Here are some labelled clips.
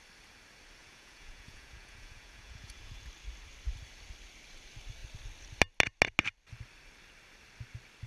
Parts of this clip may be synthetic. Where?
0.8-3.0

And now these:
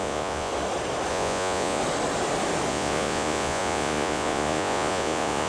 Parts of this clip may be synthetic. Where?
0.0-0.5; 1.1-1.8; 2.7-5.5